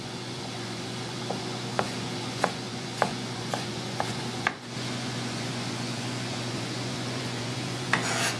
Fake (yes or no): yes